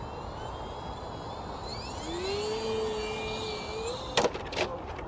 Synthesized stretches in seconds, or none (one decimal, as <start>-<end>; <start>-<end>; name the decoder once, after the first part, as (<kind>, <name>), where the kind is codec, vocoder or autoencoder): none